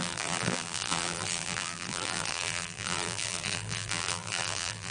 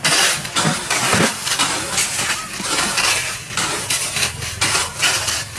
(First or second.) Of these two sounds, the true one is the second